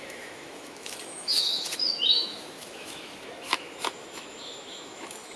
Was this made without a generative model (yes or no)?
no